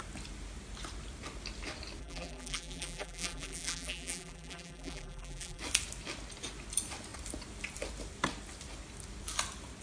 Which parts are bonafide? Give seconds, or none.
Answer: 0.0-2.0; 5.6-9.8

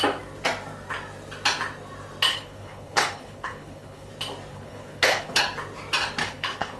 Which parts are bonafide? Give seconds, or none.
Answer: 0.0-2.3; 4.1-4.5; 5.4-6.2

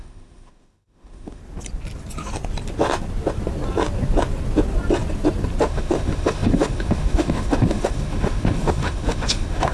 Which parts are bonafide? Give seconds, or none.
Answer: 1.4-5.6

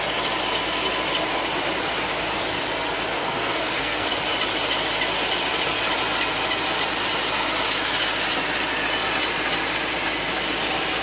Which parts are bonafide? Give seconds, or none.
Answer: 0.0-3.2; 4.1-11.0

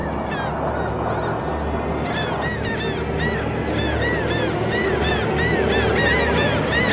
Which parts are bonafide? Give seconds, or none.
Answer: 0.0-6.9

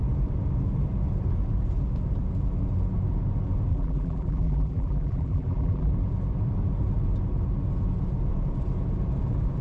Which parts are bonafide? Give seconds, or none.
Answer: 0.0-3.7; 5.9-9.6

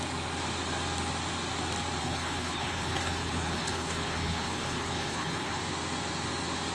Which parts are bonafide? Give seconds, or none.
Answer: 0.0-2.0; 5.6-6.7

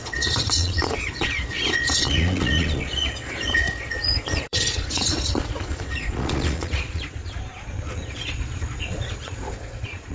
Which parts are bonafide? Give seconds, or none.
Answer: none